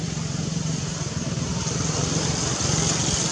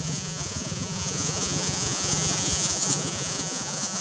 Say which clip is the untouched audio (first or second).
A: first